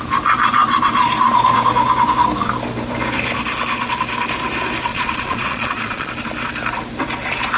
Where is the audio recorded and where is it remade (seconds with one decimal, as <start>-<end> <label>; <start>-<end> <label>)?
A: 0.0-4.9 recorded; 4.9-6.1 remade; 6.1-7.6 recorded